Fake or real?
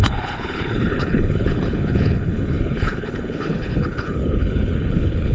fake